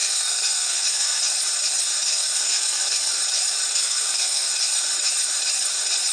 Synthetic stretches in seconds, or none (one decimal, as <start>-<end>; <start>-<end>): 0.0-1.2; 2.1-3.2; 3.7-4.5